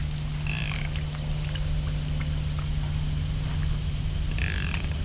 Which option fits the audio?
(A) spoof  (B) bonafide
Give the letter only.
B